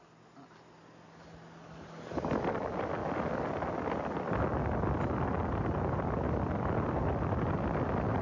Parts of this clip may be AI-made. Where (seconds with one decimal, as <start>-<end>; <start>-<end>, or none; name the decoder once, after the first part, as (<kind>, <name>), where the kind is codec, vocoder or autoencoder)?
none